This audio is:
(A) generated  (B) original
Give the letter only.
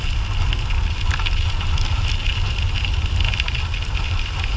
B